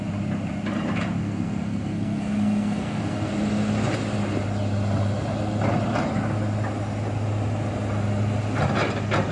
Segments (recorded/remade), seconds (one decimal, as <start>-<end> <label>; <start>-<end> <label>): 0.0-1.2 recorded; 1.2-3.3 remade; 3.3-9.3 recorded